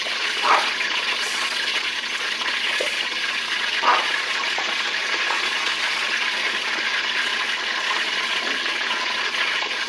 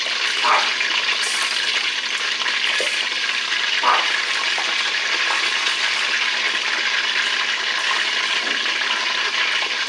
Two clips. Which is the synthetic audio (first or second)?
first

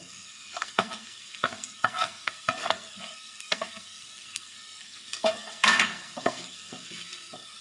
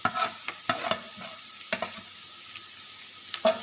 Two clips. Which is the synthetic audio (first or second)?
first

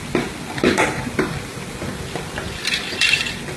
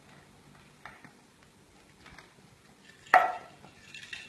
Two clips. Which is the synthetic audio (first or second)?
first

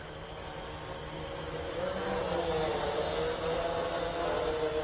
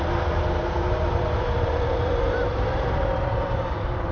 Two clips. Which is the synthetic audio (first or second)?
second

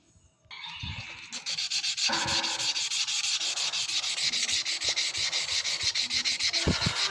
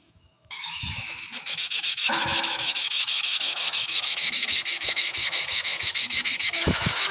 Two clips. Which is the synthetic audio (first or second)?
second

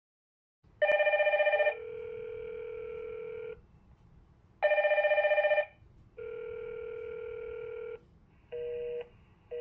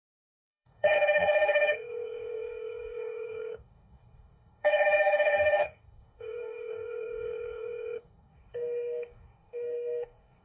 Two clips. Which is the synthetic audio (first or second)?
second